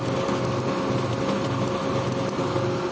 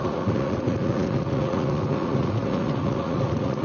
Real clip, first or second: first